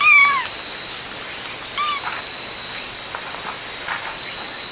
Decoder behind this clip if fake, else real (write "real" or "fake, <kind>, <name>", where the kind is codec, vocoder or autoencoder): real